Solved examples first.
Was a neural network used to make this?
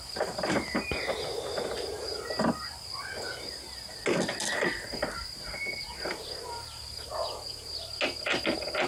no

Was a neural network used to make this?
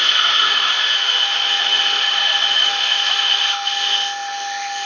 yes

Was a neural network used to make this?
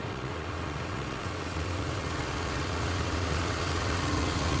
yes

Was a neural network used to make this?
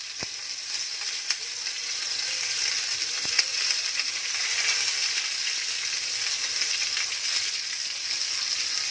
no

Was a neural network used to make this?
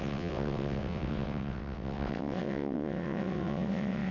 yes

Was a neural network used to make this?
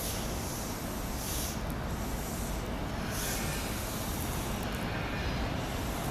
no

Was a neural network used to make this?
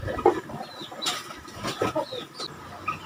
no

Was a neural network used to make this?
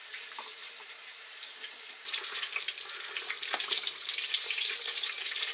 yes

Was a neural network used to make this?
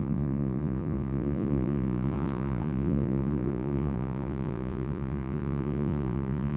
yes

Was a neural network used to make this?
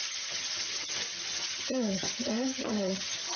yes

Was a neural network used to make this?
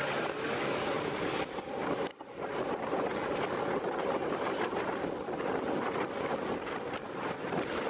no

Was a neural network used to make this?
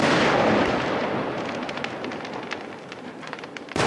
yes